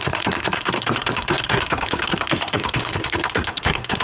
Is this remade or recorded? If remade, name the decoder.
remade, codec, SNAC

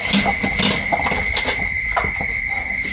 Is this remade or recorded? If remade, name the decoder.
recorded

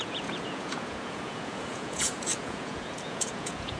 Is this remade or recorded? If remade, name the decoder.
remade, vocoder, Vocos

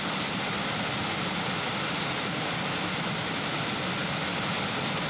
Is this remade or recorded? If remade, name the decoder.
recorded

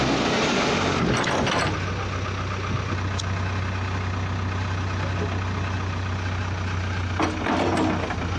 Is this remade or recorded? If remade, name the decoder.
recorded